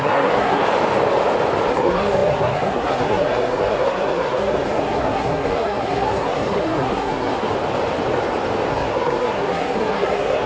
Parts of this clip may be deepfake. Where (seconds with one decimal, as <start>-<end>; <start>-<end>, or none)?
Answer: 0.0-0.6; 1.7-7.5; 8.7-10.5